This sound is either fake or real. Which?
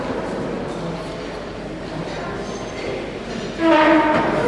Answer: real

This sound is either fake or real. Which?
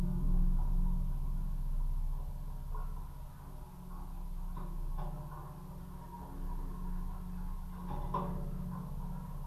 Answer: real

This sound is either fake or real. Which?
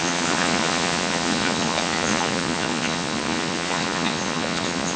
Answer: fake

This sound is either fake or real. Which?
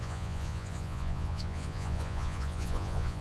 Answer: fake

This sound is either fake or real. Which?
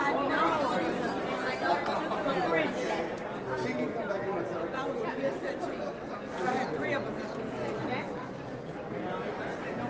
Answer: real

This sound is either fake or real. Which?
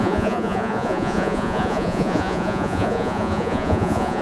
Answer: fake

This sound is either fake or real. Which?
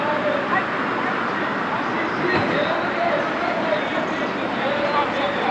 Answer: real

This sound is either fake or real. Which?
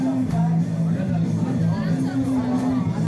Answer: real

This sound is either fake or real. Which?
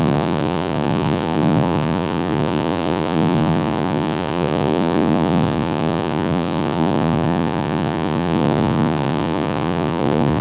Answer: fake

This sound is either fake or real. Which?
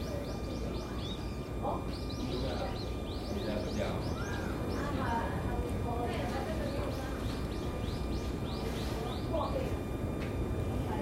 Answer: real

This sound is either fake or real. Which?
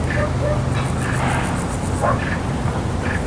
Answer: real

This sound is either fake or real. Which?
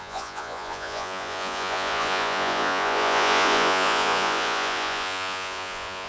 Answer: fake